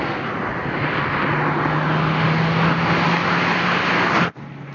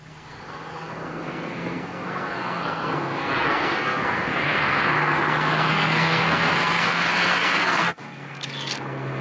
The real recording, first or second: first